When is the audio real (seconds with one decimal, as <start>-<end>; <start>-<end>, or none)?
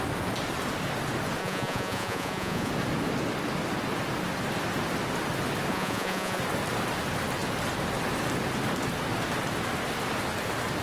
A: 0.0-1.4; 2.7-5.7; 6.4-10.8